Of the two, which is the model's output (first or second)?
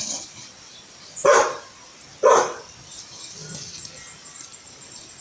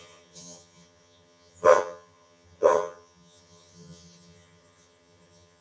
second